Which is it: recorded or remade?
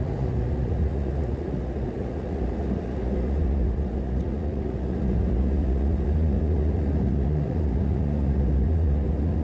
remade